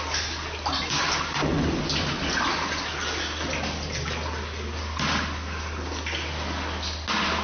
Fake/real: real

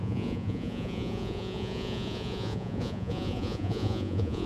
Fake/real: fake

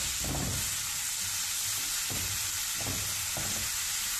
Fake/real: real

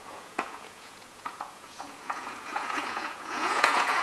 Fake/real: fake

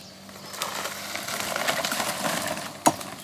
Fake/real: real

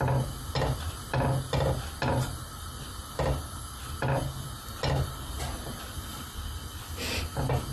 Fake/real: real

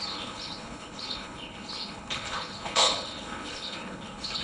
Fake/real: fake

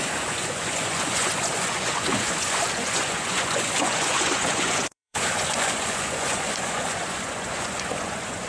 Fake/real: fake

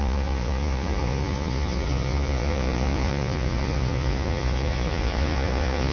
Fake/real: fake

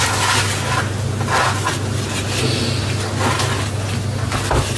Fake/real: real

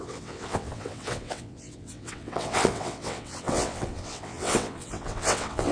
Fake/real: fake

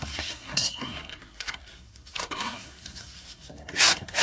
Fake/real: fake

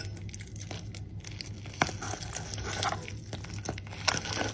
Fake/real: real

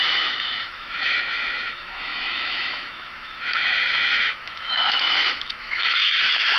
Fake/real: fake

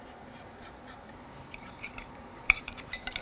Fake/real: fake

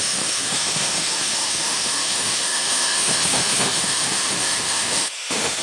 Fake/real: fake